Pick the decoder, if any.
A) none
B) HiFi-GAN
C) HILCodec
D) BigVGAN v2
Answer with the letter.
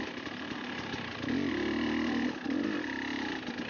A